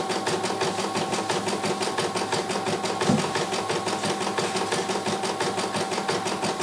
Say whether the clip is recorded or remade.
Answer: recorded